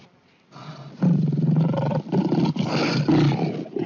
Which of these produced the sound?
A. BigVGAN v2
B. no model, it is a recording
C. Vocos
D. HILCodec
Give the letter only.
B